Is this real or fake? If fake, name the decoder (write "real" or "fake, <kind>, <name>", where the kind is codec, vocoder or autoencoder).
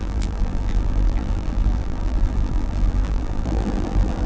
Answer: fake, vocoder, BigVGAN v2